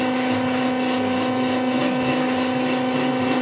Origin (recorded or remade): recorded